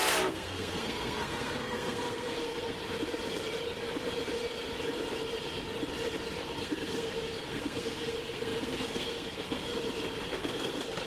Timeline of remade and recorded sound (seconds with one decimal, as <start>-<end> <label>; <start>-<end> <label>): 0.0-2.8 remade; 2.8-6.4 recorded; 6.4-9.7 remade; 9.7-10.3 recorded; 10.3-11.1 remade